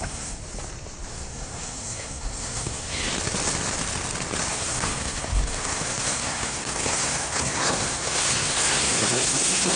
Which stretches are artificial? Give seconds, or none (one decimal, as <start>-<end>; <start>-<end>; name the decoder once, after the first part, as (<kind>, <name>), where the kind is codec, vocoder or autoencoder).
0.0-0.4 (codec, SNAC); 1.1-3.1; 4.5-9.8